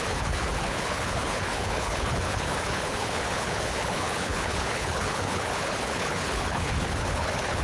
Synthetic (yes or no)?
yes